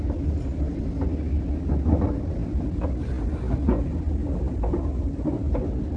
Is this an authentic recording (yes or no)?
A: yes